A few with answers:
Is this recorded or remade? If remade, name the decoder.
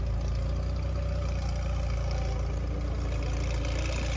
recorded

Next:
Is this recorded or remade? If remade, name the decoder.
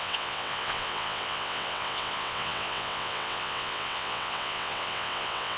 remade, vocoder, WaveNeXt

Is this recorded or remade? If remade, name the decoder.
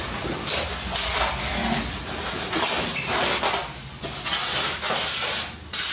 recorded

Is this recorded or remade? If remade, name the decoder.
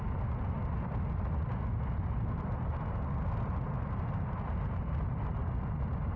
recorded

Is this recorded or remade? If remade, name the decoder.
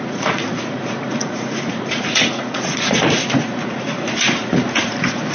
remade, vocoder, Vocos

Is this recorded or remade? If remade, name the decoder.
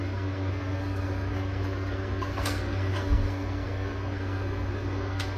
remade, codec, SNAC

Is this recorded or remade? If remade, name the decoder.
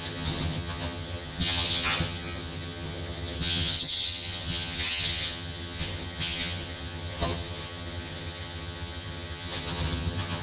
remade, vocoder, HiFi-GAN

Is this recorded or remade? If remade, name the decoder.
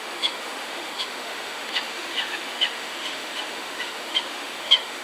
remade, autoencoder, DAC-VAE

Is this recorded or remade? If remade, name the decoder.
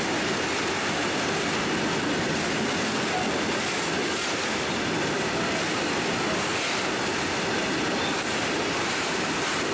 recorded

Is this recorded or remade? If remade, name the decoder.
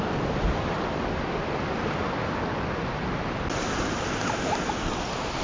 recorded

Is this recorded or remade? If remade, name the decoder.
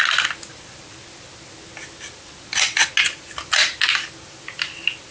recorded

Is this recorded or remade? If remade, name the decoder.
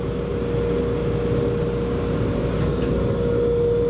recorded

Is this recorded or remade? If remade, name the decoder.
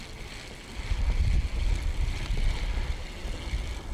recorded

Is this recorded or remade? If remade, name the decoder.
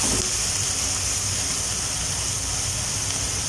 recorded